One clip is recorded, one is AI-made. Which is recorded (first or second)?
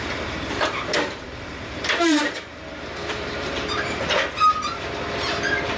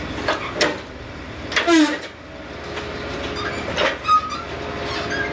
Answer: second